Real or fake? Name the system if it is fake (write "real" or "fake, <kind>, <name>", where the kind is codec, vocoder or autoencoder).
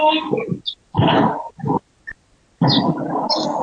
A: real